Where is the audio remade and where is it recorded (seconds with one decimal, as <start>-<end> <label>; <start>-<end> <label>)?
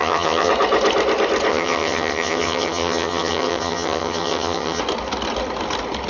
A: 0.0-0.5 remade; 0.5-1.5 recorded; 1.5-4.8 remade; 4.8-6.1 recorded